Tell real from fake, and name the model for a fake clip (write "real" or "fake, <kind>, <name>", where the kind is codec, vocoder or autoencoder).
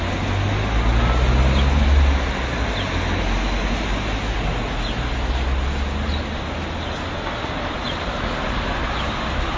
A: real